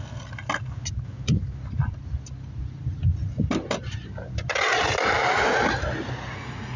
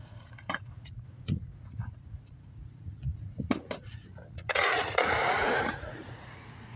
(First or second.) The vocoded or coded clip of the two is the second